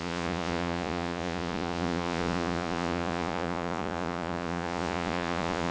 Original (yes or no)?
no